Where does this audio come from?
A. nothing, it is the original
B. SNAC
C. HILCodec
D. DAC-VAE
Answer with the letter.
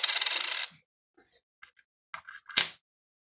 A